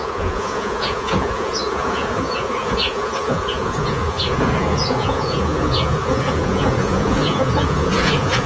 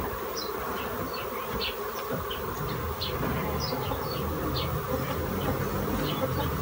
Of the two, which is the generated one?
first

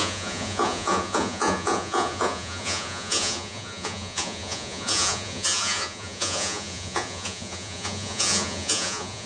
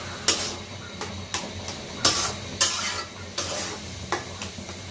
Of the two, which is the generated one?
first